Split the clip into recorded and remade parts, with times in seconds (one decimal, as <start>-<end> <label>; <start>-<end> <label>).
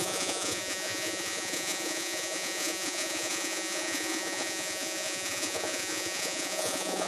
0.0-7.1 remade